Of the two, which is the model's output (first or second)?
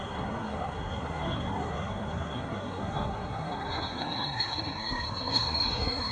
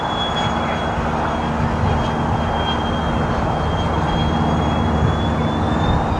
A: first